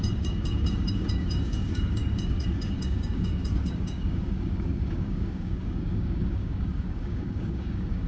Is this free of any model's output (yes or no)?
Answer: no